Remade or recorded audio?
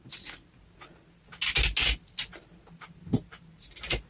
recorded